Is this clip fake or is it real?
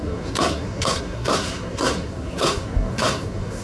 fake